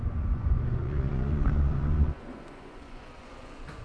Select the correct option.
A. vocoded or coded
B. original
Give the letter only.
A